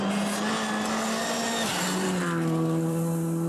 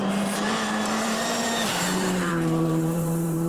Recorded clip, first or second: first